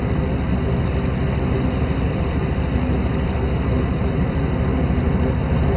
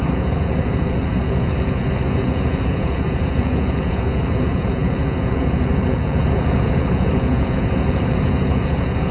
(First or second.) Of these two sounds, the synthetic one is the second